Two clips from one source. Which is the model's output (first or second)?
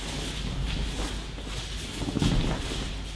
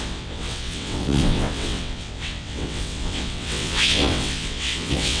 second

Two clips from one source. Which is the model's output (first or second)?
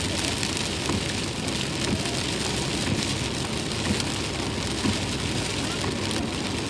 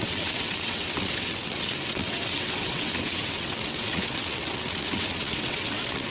second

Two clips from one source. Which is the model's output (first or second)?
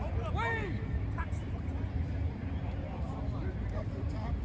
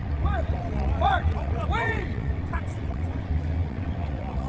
second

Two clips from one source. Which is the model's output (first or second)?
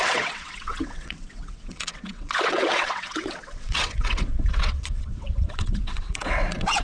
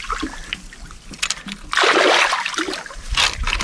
first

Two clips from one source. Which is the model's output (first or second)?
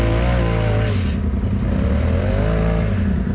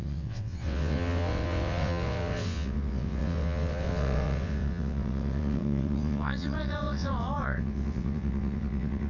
second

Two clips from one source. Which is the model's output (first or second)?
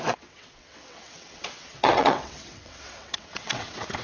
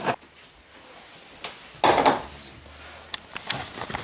first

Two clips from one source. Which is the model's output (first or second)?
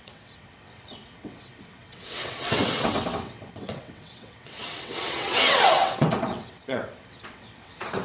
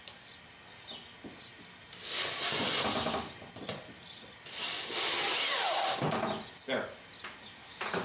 first